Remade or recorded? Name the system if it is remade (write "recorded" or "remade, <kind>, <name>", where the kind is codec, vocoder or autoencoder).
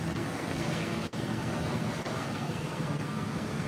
remade, codec, SNAC